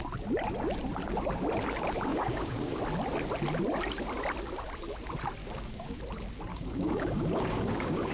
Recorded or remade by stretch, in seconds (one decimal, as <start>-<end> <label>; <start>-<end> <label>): 0.0-2.1 recorded; 2.1-2.8 remade; 2.8-5.4 recorded; 5.4-6.0 remade; 6.0-6.5 recorded; 6.5-8.1 remade